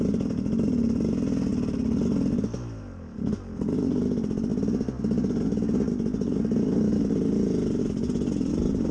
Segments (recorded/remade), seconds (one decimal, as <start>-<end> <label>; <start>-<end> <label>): 0.0-8.9 recorded

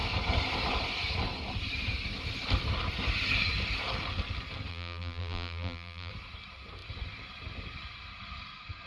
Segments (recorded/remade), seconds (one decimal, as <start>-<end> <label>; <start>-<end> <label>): 0.0-4.7 recorded; 4.7-6.1 remade; 6.1-8.9 recorded

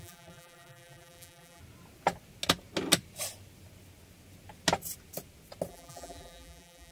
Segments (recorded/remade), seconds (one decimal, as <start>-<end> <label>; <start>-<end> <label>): 0.0-1.6 remade; 1.6-5.7 recorded; 5.7-6.9 remade

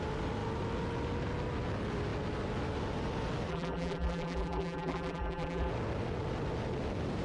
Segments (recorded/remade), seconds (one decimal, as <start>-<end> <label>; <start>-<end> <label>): 0.0-3.5 recorded; 3.5-5.7 remade; 5.7-7.2 recorded

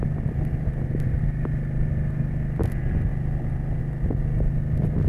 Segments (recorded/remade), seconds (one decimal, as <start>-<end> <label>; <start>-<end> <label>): 0.0-5.1 recorded

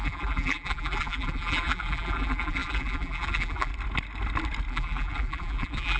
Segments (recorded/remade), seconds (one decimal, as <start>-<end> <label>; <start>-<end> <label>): 0.0-3.7 remade; 3.7-4.7 recorded; 4.7-6.0 remade

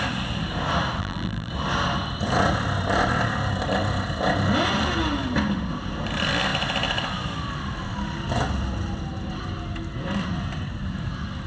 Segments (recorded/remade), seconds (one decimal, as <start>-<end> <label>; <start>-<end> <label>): 0.0-1.0 recorded; 1.0-1.5 remade; 1.5-11.5 recorded